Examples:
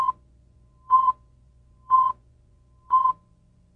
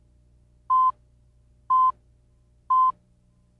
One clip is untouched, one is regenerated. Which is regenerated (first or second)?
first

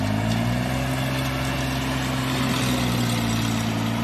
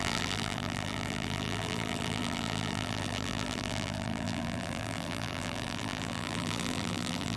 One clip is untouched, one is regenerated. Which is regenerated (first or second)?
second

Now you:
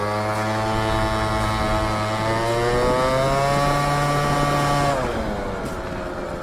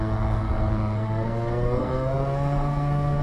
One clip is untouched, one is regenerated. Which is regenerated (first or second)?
second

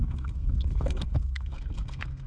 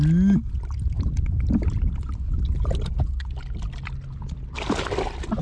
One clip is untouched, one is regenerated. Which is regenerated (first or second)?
first